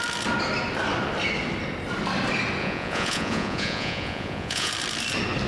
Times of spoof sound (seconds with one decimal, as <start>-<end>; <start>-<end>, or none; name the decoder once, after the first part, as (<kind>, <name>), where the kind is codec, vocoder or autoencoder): 2.6-4.7 (vocoder, Vocos)